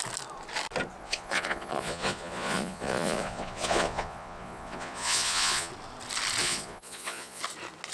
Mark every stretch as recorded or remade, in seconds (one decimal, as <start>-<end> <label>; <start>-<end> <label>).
0.0-1.0 recorded; 1.0-5.7 remade; 5.7-6.4 recorded; 6.4-7.4 remade; 7.4-7.9 recorded